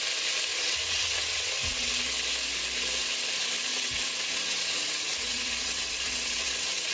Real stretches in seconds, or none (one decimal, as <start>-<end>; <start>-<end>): 0.0-0.5; 1.9-3.7